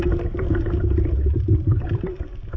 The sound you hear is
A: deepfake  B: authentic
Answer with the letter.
A